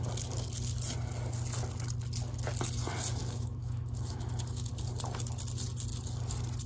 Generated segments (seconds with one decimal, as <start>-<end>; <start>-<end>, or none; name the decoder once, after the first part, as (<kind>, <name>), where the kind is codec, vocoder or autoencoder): 3.2-4.7 (autoencoder, DAC-VAE)

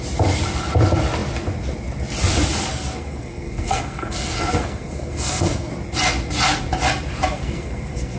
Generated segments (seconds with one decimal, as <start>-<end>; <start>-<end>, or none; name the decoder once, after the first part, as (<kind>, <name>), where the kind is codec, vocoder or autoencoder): 2.7-5.7 (codec, SNAC); 7.3-8.2

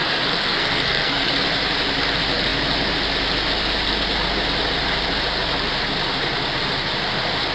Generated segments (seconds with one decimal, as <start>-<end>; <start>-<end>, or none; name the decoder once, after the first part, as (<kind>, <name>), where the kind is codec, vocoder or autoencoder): 0.0-1.3 (codec, SNAC)

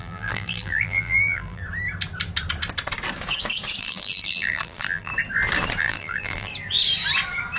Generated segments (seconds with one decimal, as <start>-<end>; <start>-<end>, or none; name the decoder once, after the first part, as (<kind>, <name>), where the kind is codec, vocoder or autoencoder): 0.0-1.6 (vocoder, BigVGAN v2); 3.8-5.1; 5.8-6.5

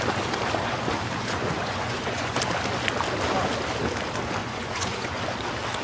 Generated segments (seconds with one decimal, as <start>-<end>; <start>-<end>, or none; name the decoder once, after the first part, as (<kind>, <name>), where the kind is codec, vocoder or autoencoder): 1.2-2.4 (vocoder, Vocos); 4.4-5.2